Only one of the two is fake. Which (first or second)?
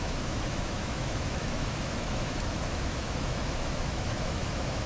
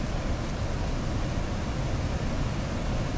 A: first